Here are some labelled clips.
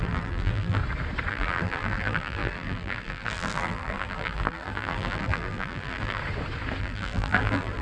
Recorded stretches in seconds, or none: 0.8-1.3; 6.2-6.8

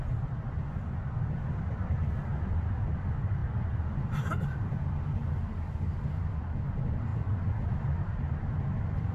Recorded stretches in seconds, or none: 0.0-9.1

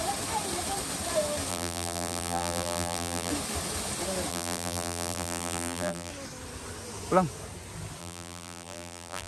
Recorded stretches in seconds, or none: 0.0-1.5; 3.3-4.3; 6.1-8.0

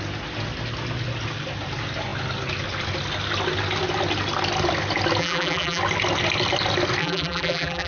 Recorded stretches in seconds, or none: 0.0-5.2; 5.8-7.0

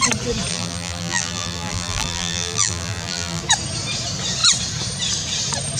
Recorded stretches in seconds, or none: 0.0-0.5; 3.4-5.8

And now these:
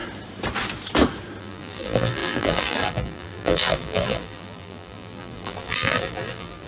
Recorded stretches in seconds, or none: 0.0-1.4